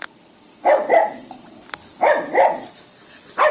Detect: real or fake real